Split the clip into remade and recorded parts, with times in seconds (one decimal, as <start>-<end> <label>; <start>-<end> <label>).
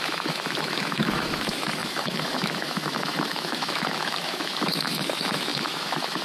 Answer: 0.0-6.2 remade